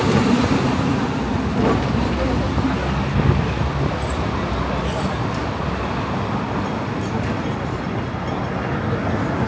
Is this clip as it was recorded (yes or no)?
yes